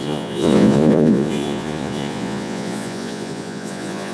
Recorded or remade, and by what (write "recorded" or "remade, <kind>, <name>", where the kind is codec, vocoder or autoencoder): remade, vocoder, Vocos